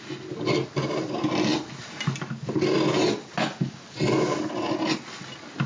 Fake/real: real